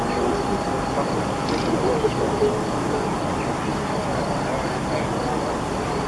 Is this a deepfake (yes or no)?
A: no